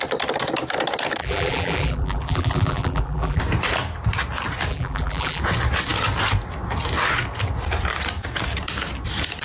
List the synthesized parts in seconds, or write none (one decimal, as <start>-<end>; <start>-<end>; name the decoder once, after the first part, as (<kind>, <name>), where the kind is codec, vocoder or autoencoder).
1.2-3.4 (vocoder, BigVGAN v2); 4.7-5.4